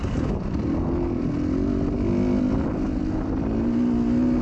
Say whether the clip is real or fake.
real